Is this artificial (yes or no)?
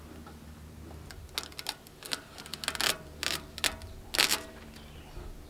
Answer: no